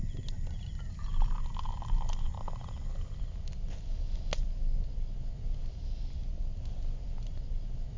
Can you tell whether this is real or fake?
real